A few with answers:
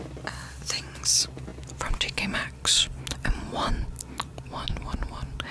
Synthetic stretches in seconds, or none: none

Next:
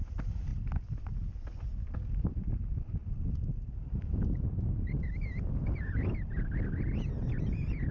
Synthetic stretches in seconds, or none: none

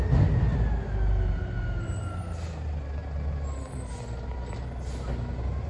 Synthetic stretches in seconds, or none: none